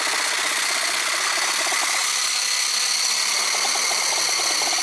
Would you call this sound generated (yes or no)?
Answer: no